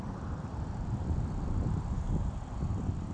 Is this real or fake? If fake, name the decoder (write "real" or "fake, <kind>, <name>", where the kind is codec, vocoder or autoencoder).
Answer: real